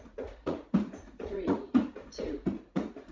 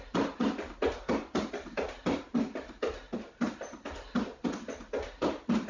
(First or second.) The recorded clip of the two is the second